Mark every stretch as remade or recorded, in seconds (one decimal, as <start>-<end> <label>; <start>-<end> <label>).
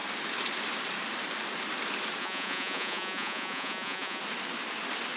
0.0-2.2 recorded; 2.2-4.2 remade; 4.2-5.2 recorded